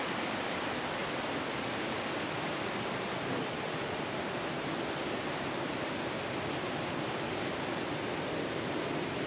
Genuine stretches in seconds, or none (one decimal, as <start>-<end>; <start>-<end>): 0.0-9.3

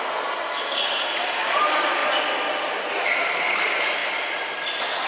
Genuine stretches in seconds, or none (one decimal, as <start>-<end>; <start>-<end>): 0.0-5.1

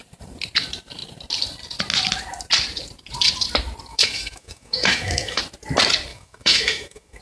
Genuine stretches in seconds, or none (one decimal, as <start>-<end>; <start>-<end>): 0.0-3.9; 5.4-6.1

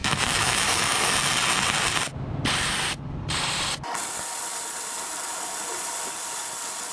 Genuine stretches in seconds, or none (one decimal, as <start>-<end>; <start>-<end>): 1.1-6.9

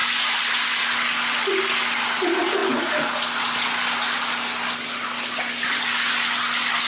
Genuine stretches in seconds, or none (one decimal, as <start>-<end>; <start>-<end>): 0.0-6.9

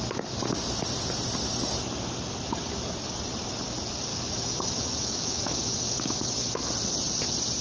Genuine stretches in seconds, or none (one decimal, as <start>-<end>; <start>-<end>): 0.0-4.1; 6.7-7.6